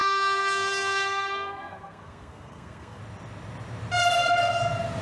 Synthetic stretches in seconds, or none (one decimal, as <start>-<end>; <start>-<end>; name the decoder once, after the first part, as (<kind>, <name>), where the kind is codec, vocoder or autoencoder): 0.0-3.0 (codec, SNAC); 4.0-4.6